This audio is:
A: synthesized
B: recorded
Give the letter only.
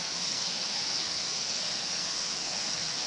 A